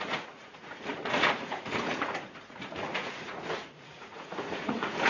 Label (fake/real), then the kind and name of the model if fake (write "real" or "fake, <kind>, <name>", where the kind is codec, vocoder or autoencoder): fake, vocoder, Vocos